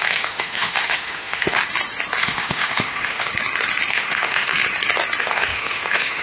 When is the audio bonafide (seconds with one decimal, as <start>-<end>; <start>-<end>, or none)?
1.6-2.2; 3.3-3.9; 4.5-5.2